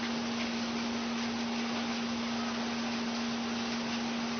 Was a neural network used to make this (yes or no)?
no